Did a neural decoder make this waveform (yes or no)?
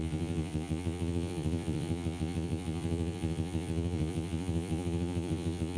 yes